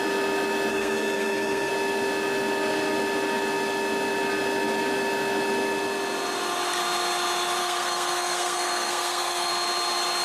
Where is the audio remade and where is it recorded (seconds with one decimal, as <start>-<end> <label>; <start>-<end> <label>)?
0.0-0.7 recorded; 0.7-1.7 remade; 1.7-7.6 recorded; 7.6-9.5 remade; 9.5-10.2 recorded

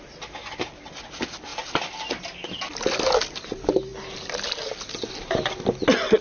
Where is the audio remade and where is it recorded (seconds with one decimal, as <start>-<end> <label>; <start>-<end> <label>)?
0.0-6.2 recorded